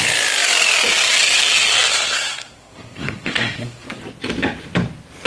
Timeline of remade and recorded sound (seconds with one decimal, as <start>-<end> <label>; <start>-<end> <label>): 0.0-1.9 recorded; 1.9-4.0 remade; 4.0-5.3 recorded